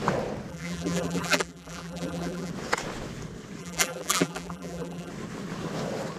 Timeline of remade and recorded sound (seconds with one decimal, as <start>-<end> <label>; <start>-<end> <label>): 0.0-0.5 recorded; 0.5-2.5 remade; 2.5-3.6 recorded; 3.6-5.1 remade; 5.1-6.2 recorded